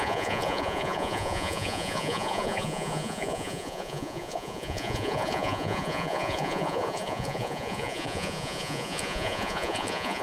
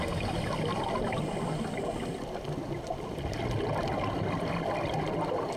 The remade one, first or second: first